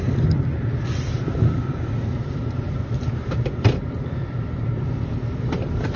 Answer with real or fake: real